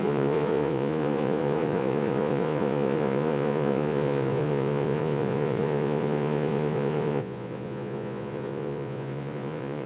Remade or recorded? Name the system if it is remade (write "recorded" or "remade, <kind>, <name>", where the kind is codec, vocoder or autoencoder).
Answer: remade, vocoder, Vocos